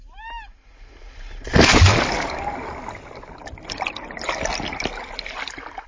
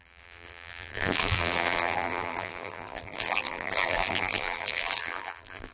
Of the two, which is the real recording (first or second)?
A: first